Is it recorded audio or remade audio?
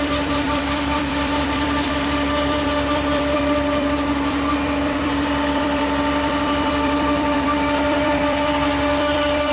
remade